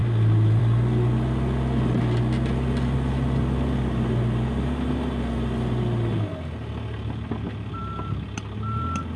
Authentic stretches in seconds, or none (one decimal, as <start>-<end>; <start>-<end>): 0.0-9.2